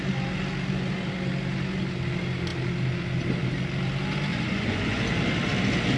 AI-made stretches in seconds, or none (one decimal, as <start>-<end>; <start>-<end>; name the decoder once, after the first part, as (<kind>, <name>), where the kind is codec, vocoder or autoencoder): 4.3-5.0 (vocoder, Vocos)